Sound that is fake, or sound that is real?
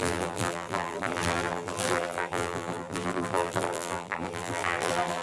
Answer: fake